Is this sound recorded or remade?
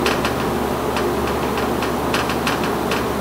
recorded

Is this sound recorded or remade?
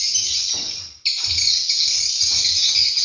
recorded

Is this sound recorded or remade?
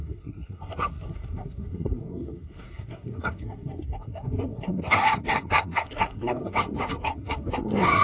remade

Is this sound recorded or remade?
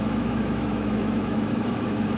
remade